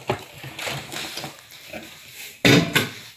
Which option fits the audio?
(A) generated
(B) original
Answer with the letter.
B